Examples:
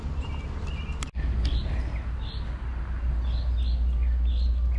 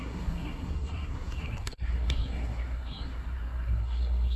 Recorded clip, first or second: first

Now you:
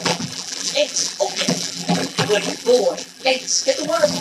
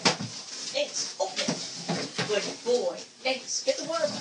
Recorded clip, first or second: second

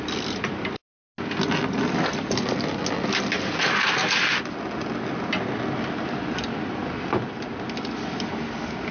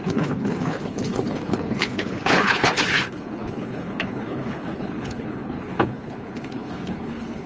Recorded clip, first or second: first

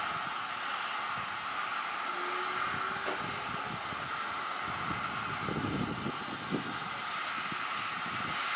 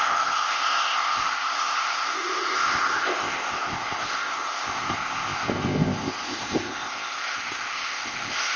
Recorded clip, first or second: first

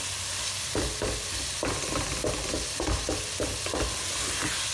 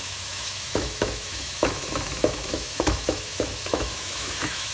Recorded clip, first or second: first